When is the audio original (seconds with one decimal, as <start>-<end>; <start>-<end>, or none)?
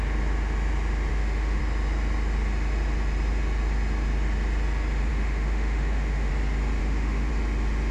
0.0-1.1; 1.6-5.1; 6.3-6.8; 7.3-7.9